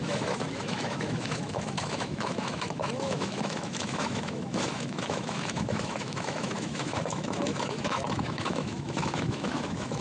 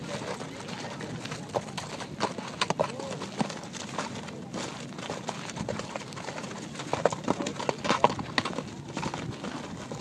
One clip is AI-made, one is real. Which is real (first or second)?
second